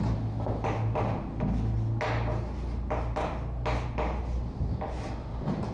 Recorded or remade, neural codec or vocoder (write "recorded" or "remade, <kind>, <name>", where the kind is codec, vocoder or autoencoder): recorded